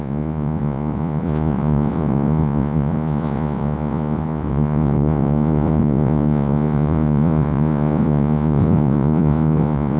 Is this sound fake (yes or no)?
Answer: yes